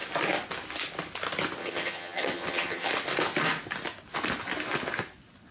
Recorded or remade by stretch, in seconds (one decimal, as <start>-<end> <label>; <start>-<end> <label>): 0.0-1.6 recorded; 1.6-2.9 remade; 2.9-5.5 recorded